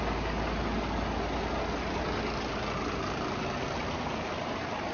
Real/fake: real